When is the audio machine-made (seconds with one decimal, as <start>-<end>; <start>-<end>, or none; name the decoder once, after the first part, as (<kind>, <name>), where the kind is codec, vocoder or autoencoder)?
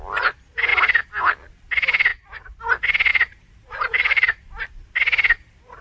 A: 3.1-4.5 (vocoder, BigVGAN v2)